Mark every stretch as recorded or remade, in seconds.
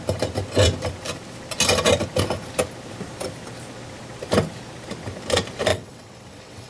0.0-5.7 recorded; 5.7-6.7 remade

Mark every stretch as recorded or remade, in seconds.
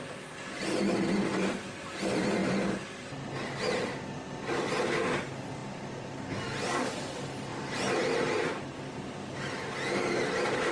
0.0-10.7 recorded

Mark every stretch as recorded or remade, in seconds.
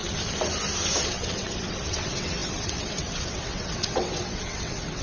0.0-1.0 recorded; 1.0-5.0 remade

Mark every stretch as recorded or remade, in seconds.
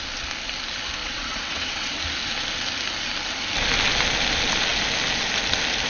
0.0-1.0 recorded; 1.0-2.0 remade; 2.0-5.9 recorded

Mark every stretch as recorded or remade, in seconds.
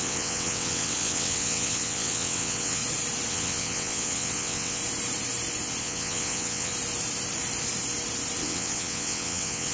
0.0-2.8 remade; 2.8-3.3 recorded; 3.3-4.8 remade; 4.8-5.8 recorded; 5.8-6.7 remade; 6.7-8.4 recorded; 8.4-9.7 remade